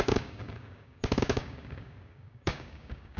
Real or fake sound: fake